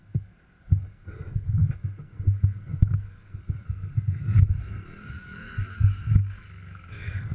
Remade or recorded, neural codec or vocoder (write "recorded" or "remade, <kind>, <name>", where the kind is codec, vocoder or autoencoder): remade, codec, SNAC